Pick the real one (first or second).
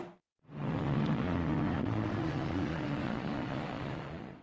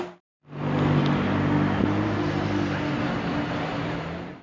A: second